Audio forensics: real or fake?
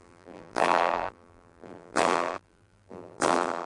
fake